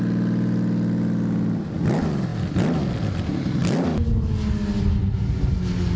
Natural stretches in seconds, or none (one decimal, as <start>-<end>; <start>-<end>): 0.0-6.0